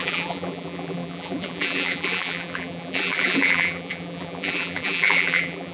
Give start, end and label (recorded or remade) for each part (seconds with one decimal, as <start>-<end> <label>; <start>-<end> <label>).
0.0-5.7 remade